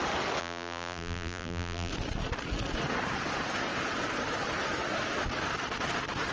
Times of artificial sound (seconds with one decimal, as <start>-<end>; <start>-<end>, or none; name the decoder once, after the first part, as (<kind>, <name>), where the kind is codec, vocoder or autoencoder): 0.4-1.9 (vocoder, BigVGAN v2)